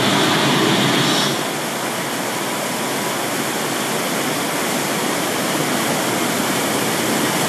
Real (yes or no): yes